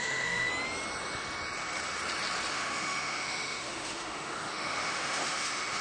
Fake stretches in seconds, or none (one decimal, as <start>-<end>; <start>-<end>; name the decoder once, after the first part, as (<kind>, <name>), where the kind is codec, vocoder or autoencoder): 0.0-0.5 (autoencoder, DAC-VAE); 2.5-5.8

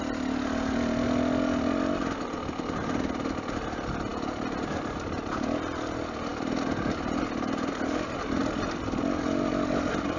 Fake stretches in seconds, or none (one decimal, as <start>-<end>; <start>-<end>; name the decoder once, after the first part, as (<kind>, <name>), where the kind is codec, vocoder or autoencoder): none

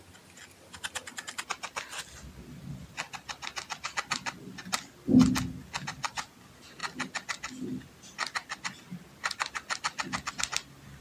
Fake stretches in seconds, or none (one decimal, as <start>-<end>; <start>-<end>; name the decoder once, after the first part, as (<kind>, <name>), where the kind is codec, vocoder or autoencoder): none

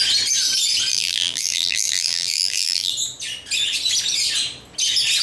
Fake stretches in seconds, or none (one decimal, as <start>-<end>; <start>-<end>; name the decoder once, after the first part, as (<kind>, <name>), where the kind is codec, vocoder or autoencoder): 0.9-2.9 (vocoder, BigVGAN v2)

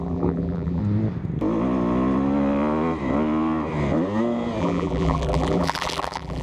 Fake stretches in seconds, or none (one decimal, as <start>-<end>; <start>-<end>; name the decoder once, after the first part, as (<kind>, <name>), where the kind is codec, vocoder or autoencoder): 0.0-0.8 (vocoder, BigVGAN v2); 4.6-6.4